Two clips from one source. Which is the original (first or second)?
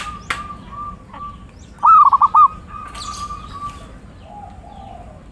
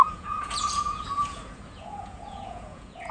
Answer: first